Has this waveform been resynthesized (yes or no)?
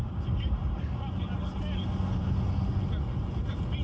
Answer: no